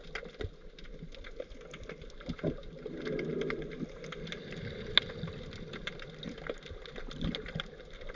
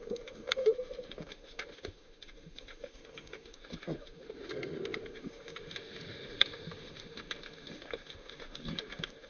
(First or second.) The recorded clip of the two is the first